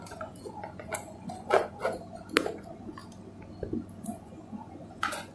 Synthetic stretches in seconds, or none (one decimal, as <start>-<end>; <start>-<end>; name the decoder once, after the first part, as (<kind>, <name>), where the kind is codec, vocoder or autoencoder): 0.0-1.8 (vocoder, Vocos); 2.5-3.0; 4.0-5.3